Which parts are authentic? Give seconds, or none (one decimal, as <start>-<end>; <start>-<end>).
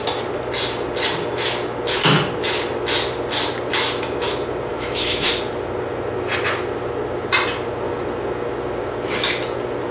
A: 0.0-4.7; 5.3-9.9